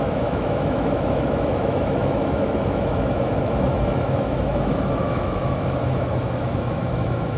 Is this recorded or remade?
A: remade